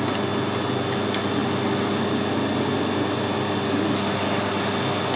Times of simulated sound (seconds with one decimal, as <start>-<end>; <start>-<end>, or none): none